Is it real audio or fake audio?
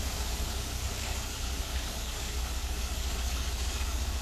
fake